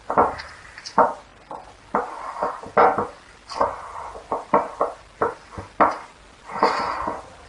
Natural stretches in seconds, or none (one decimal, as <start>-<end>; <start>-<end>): 0.0-7.5